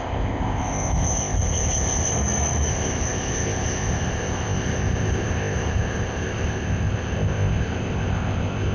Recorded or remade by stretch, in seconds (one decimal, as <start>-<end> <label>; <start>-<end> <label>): 0.0-2.1 remade; 2.1-2.7 recorded; 2.7-8.7 remade